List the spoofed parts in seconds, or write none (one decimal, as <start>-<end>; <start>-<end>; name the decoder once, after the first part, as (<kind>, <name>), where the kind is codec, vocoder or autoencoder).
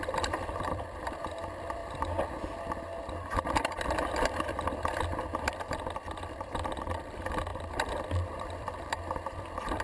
0.0-1.8 (vocoder, BigVGAN v2); 3.3-9.8